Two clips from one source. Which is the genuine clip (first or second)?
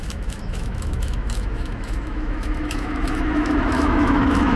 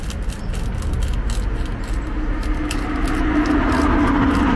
second